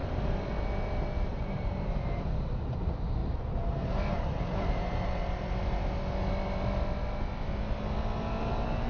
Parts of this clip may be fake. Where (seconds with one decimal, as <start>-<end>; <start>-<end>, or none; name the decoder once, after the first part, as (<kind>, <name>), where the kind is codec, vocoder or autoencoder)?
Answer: 1.3-2.3 (vocoder, BigVGAN v2)